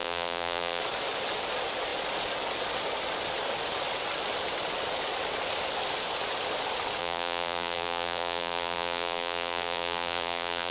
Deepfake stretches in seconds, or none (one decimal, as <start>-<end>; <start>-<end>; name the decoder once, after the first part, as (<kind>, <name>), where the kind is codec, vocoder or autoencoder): 0.0-0.8 (vocoder, BigVGAN v2); 7.0-10.7